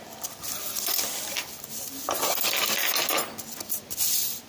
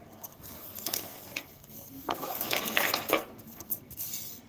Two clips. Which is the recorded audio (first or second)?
first